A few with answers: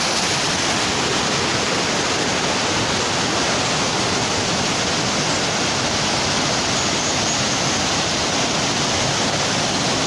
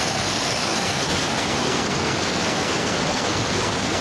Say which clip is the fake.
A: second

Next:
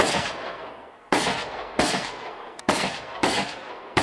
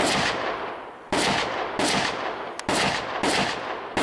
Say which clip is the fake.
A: first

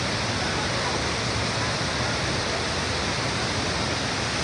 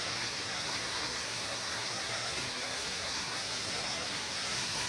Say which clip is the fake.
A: second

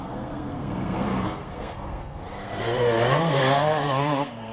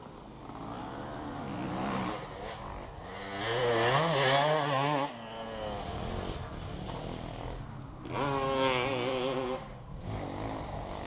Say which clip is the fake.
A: first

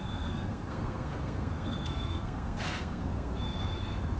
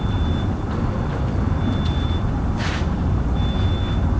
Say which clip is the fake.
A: first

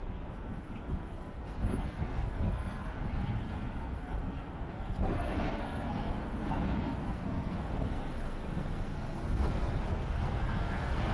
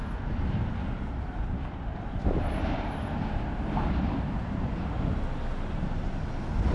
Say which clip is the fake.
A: first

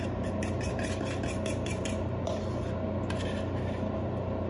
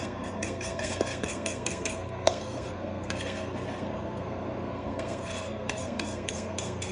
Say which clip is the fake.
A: second